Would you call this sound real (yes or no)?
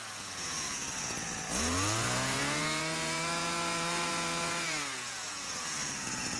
no